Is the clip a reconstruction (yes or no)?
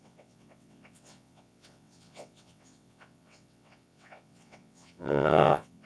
yes